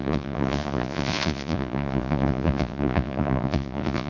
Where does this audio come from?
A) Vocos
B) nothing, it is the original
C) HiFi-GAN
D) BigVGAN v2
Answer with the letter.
A